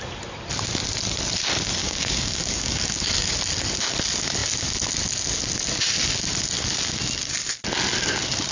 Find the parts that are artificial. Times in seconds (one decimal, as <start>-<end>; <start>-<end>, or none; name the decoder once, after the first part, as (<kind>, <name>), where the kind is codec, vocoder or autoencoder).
1.8-3.3 (codec, DAC)